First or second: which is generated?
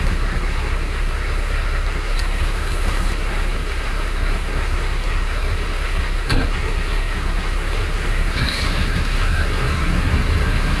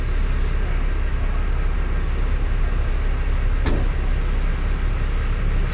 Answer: first